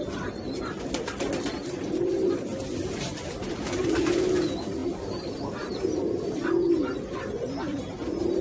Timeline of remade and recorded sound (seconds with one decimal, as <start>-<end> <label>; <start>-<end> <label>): 0.0-8.4 recorded